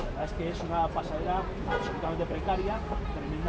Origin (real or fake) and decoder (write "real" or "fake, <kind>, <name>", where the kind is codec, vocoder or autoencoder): real